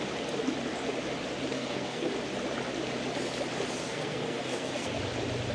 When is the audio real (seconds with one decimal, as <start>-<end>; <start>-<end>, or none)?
0.0-1.5; 2.1-3.8; 5.0-5.5